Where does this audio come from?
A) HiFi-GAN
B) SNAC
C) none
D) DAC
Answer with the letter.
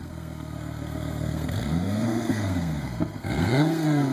B